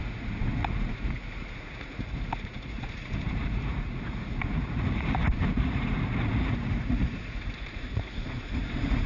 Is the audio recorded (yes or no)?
no